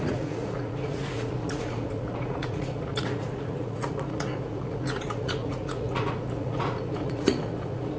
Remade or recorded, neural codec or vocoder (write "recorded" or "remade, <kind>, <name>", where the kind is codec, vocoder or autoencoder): remade, vocoder, Vocos